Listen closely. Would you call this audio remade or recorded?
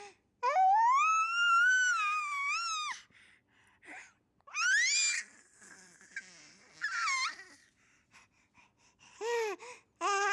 recorded